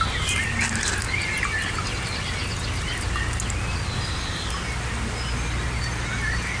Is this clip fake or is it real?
real